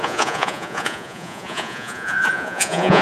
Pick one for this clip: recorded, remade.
remade